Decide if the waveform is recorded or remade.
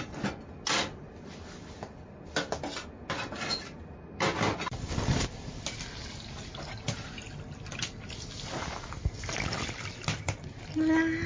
recorded